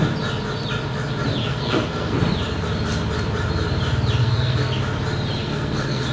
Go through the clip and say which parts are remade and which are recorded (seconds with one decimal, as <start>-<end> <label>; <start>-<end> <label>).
0.0-1.4 recorded; 1.4-2.2 remade; 2.2-4.2 recorded; 4.2-4.8 remade; 4.8-5.4 recorded; 5.4-6.1 remade